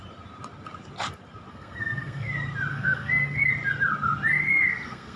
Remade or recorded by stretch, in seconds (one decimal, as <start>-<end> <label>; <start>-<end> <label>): 0.0-1.5 recorded; 1.5-2.3 remade; 2.3-2.7 recorded; 2.7-3.5 remade; 3.5-4.3 recorded; 4.3-5.2 remade